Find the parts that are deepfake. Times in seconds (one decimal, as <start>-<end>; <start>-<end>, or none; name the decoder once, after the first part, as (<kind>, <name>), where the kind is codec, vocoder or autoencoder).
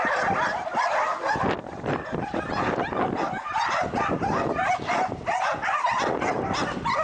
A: none